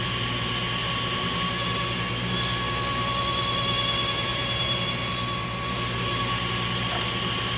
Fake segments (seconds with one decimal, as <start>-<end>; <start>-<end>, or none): 0.8-1.4; 4.3-4.8